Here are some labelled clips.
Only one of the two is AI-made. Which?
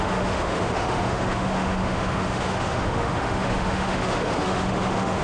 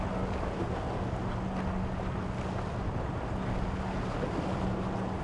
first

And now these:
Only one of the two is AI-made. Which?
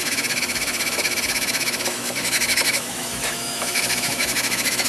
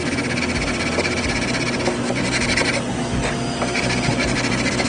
first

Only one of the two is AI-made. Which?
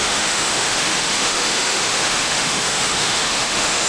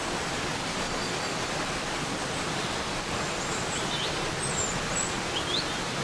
first